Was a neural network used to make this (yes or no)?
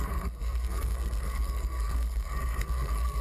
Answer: yes